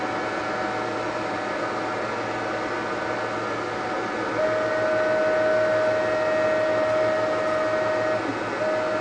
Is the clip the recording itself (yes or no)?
yes